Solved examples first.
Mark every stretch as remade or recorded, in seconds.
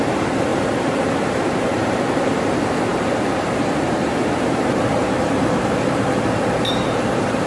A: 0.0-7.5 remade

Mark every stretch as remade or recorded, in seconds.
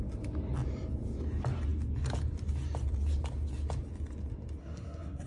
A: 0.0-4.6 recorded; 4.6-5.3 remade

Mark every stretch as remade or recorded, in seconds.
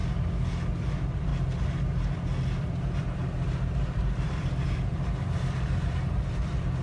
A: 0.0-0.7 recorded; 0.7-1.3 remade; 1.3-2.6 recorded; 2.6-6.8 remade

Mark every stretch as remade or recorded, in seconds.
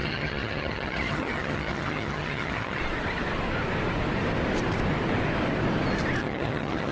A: 0.0-2.8 remade; 2.8-6.2 recorded; 6.2-6.9 remade